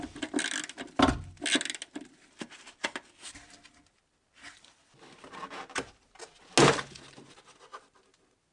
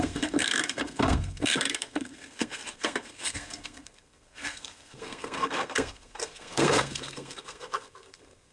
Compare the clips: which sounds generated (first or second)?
second